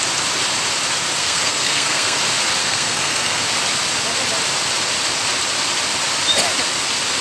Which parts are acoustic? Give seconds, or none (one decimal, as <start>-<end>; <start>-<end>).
0.0-1.2; 2.2-2.6; 3.4-7.2